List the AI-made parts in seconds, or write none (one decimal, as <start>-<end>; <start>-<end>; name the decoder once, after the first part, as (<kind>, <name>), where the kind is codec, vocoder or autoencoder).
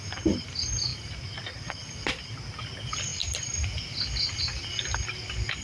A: none